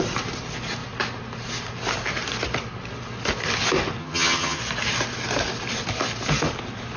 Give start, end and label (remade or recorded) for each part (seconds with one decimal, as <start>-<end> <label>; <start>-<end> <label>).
0.0-4.0 recorded; 4.0-4.6 remade; 4.6-7.0 recorded